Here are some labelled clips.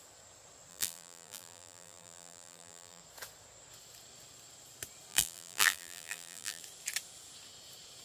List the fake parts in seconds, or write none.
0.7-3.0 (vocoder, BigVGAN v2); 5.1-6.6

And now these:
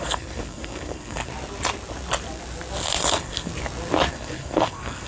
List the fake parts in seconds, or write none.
0.0-1.3 (codec, SNAC); 3.1-3.5; 4.1-5.1

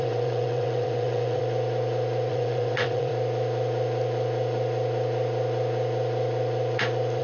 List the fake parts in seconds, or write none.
0.0-1.4 (vocoder, WaveNeXt); 2.3-3.1

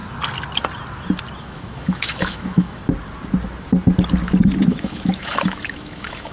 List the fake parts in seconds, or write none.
1.4-2.8 (autoencoder, DAC-VAE); 4.7-6.3

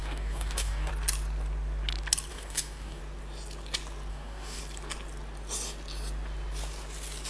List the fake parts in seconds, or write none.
0.0-0.9 (codec, DAC); 2.3-3.0; 4.1-4.6

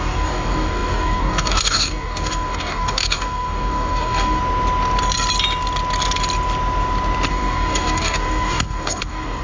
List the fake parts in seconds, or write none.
0.0-4.4 (codec, DAC); 7.3-9.4

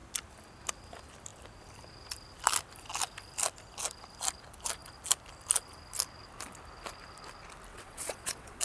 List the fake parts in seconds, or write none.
7.7-8.6 (vocoder, WaveNeXt)